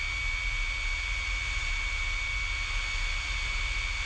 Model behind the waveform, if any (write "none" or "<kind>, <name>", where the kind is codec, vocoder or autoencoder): none